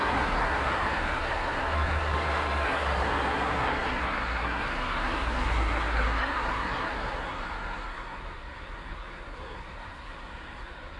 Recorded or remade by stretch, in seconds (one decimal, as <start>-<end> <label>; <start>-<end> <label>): 0.0-11.0 remade